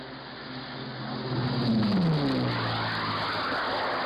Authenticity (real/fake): real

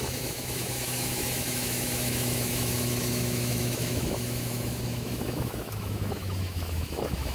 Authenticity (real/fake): fake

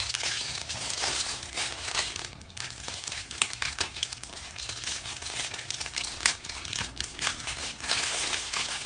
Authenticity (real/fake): fake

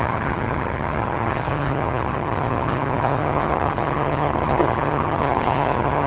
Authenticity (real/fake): fake